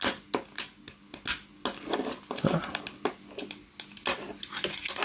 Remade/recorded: recorded